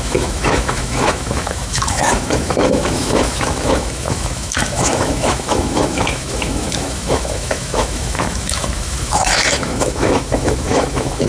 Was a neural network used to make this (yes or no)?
yes